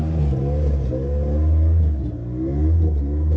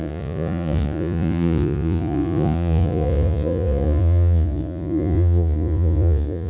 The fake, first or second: second